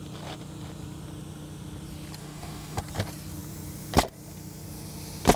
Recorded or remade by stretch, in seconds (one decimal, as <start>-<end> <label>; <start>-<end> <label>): 0.0-2.2 recorded; 2.2-2.8 remade; 2.8-5.4 recorded

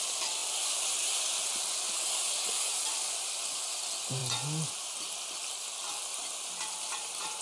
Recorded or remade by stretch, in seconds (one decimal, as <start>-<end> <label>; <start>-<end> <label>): 0.0-0.4 recorded; 0.4-1.5 remade; 1.5-6.1 recorded; 6.1-7.4 remade

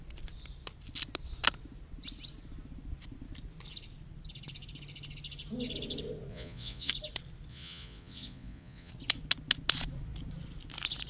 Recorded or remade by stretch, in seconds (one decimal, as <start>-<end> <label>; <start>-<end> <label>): 0.0-6.3 recorded; 6.3-6.9 remade; 6.9-7.5 recorded; 7.5-8.9 remade; 8.9-11.1 recorded

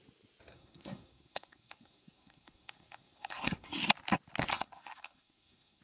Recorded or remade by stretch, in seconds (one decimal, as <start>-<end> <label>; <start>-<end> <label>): 0.0-0.5 recorded; 0.5-3.8 remade; 3.8-4.5 recorded; 4.5-5.8 remade

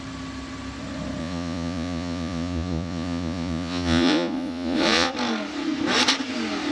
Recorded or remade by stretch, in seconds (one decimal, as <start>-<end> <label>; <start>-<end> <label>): 0.0-1.2 recorded; 1.2-5.1 remade; 5.1-6.7 recorded

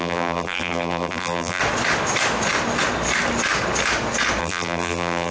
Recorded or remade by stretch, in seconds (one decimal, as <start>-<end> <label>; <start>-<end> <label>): 0.0-1.6 remade; 1.6-4.4 recorded; 4.4-5.3 remade

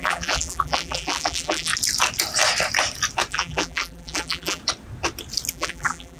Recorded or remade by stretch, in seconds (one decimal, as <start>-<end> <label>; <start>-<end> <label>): 0.0-1.7 remade; 1.7-3.3 recorded; 3.3-4.6 remade; 4.6-5.5 recorded; 5.5-6.2 remade